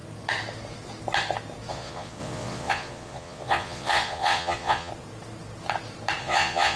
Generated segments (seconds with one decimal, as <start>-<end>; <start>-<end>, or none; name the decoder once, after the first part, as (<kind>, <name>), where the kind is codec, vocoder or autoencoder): 1.7-4.9 (vocoder, Vocos); 6.2-6.8